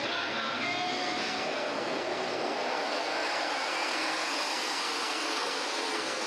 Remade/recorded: remade